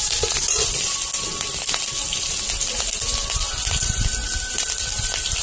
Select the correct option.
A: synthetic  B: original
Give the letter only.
B